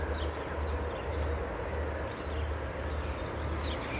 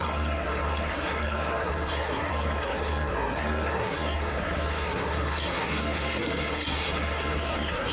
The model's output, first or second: second